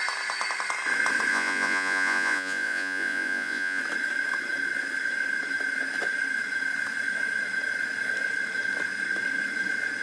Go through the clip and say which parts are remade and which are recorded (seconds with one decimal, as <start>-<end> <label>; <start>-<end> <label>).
0.0-1.3 recorded; 1.3-3.8 remade; 3.8-10.0 recorded